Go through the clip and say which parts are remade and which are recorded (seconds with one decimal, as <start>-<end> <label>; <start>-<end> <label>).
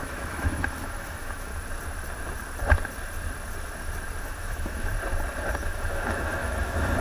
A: 0.0-1.5 remade; 1.5-4.2 recorded; 4.2-4.9 remade; 4.9-5.6 recorded; 5.6-7.0 remade